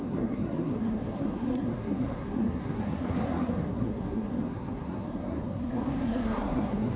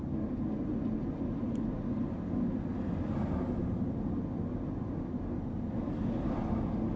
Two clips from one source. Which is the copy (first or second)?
first